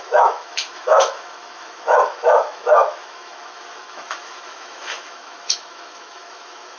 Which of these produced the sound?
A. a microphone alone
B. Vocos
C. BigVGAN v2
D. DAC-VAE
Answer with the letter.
D